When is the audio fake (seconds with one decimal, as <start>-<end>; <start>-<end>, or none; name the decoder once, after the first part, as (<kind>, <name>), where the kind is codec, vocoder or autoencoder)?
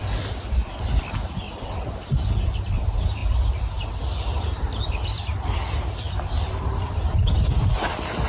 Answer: none